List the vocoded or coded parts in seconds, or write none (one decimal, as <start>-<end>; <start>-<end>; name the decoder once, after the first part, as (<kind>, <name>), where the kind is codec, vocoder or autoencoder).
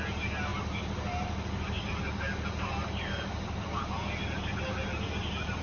none